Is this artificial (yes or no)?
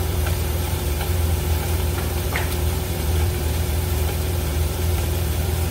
yes